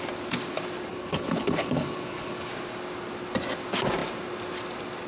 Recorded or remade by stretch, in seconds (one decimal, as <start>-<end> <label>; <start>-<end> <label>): 0.0-0.9 recorded; 0.9-2.5 remade; 2.5-5.1 recorded